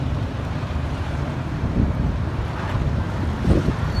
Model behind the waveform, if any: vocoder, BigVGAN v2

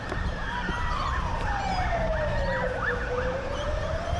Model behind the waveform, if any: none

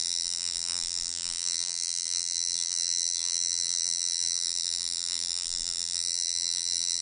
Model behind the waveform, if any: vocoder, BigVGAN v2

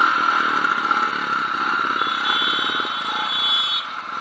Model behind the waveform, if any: none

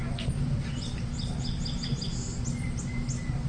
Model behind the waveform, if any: none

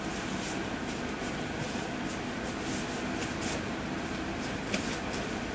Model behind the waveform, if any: none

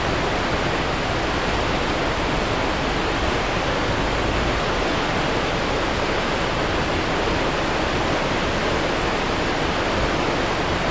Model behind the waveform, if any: none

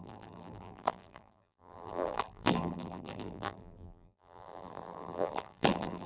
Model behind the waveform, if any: vocoder, BigVGAN v2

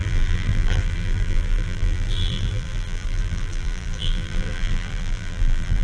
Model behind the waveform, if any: vocoder, BigVGAN v2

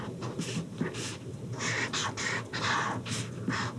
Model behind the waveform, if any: vocoder, BigVGAN v2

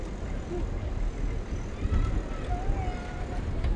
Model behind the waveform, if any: none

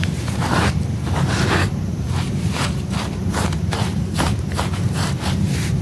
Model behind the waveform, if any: vocoder, BigVGAN v2